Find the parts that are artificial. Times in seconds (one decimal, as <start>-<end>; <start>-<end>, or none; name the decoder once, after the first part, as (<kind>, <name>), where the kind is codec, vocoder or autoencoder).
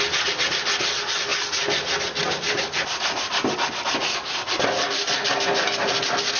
none